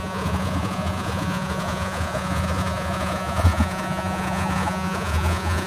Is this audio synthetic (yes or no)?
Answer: yes